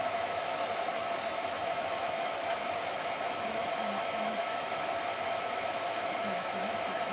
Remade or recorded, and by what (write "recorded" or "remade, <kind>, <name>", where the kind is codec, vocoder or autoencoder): remade, autoencoder, DAC-VAE